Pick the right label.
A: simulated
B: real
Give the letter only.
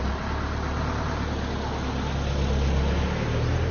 B